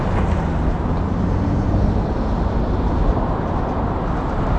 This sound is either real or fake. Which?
real